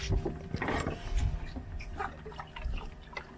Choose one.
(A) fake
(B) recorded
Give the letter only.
B